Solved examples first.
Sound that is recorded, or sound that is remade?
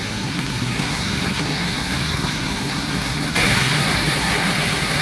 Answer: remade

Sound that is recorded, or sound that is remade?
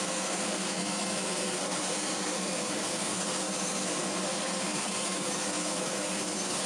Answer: remade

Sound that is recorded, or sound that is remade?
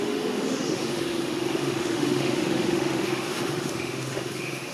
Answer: remade